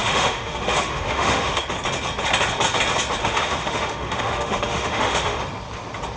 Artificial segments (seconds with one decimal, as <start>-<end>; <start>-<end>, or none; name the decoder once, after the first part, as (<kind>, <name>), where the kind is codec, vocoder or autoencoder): 0.0-1.6 (autoencoder, DAC-VAE); 3.2-5.4